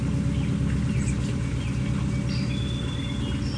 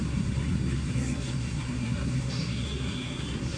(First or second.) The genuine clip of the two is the first